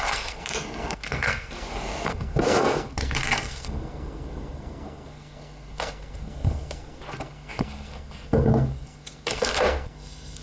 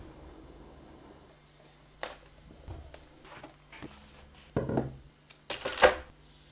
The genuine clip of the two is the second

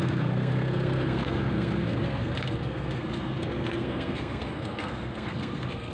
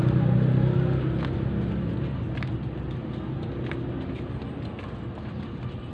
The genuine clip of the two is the second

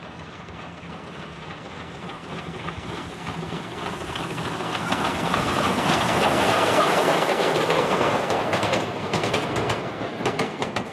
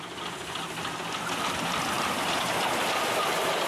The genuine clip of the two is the second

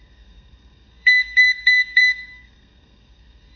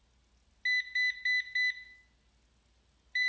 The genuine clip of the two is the second